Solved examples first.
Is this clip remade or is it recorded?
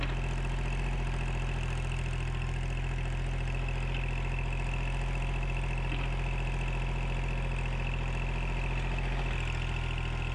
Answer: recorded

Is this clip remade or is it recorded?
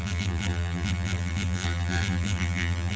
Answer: remade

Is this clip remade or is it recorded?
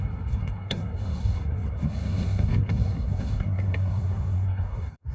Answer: remade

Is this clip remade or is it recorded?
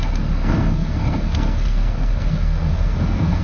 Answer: remade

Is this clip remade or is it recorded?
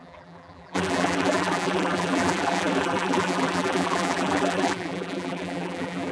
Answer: remade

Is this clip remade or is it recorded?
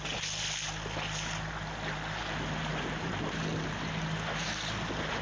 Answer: recorded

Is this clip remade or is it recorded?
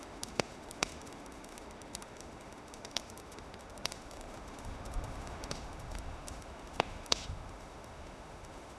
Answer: remade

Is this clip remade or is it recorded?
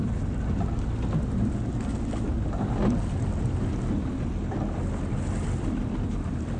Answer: recorded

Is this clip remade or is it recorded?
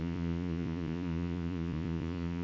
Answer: remade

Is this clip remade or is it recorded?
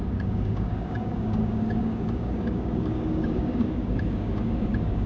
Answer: remade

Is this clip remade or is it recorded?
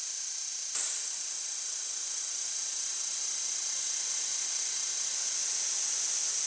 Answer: recorded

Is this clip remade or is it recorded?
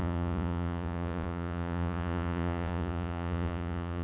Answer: remade